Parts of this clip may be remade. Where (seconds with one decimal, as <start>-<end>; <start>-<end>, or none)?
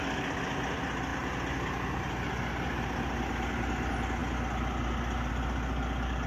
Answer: none